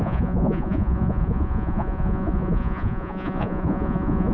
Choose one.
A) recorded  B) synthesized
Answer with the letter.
B